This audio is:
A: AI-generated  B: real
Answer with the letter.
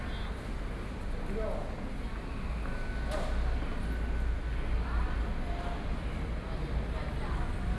B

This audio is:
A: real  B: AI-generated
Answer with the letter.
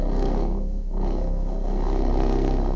B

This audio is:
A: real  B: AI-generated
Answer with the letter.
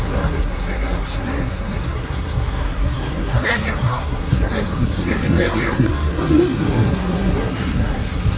B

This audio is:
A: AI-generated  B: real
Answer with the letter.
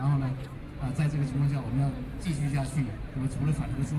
B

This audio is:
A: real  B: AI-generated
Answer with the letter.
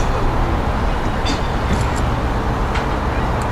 A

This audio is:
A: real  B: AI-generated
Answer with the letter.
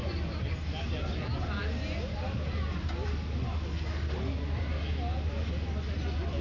A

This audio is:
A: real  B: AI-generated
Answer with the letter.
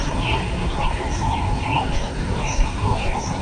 B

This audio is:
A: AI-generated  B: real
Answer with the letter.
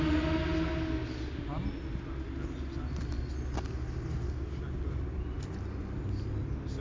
B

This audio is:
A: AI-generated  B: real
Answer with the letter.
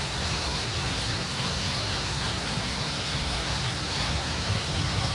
A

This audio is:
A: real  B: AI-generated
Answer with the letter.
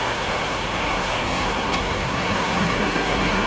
B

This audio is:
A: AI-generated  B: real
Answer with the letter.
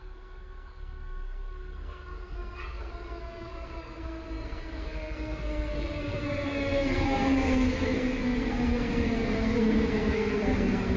A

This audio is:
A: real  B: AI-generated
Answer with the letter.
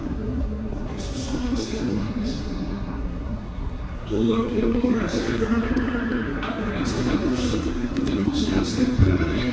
B